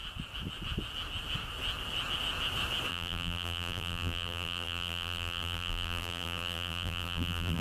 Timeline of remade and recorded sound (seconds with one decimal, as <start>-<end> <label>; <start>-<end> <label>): 0.0-2.9 recorded; 2.9-7.6 remade